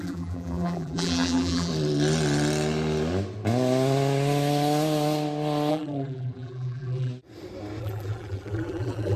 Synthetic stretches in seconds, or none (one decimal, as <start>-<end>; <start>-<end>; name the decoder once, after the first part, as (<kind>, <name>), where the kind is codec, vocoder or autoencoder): 0.0-1.7 (vocoder, BigVGAN v2); 5.7-7.1; 7.8-9.2